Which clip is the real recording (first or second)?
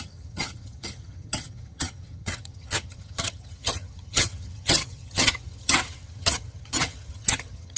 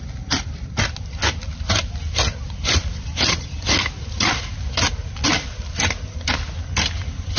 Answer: second